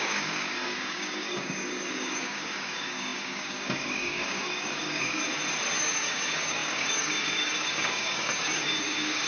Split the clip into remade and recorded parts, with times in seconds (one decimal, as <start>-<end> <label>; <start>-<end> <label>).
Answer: 0.0-5.2 remade; 5.2-5.8 recorded; 5.8-9.3 remade